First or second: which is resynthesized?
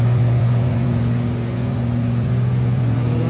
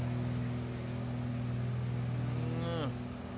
first